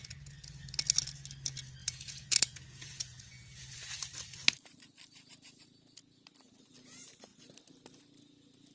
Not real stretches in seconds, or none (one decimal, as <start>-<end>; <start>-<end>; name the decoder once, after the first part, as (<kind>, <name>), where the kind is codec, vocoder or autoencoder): 1.8-3.7 (vocoder, Vocos)